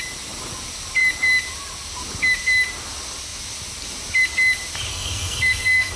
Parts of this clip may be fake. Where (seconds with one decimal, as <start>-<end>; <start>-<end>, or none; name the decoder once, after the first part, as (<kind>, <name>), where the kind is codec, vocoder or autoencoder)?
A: 4.9-6.0 (codec, SNAC)

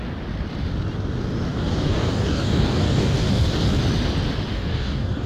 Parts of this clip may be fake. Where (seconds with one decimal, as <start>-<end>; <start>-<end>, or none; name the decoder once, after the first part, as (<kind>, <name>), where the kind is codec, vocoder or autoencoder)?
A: 1.5-3.8 (codec, DAC); 4.5-5.3

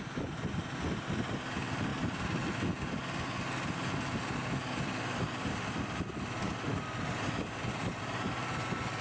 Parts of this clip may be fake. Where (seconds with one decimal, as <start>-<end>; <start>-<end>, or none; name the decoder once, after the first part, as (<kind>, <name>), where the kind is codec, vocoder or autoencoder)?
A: 1.9-2.5 (vocoder, BigVGAN v2)

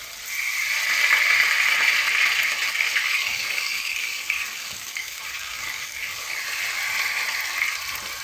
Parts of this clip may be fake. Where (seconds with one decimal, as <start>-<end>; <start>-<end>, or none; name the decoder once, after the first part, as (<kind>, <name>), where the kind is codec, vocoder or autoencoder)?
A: 3.0-6.4 (codec, DAC)